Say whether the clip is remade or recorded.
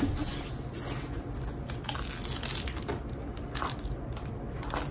recorded